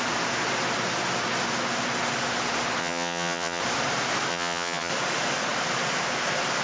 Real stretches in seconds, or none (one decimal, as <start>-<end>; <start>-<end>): 0.0-2.8; 3.6-4.3; 4.9-6.6